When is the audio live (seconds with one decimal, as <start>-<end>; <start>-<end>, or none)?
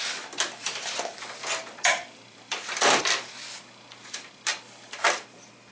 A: 0.0-1.6; 3.4-5.7